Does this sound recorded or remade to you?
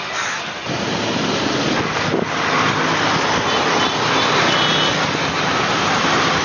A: recorded